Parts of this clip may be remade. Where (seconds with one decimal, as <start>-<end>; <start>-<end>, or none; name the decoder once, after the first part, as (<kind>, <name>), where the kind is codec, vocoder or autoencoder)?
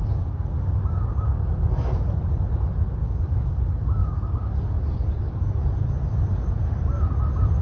none